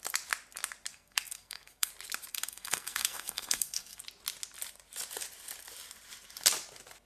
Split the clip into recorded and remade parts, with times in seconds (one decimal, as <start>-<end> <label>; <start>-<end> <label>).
0.0-0.9 recorded; 0.9-1.9 remade; 1.9-2.3 recorded; 2.3-4.0 remade; 4.0-7.1 recorded